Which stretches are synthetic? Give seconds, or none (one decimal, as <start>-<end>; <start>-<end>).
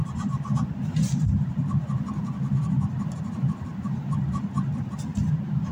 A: none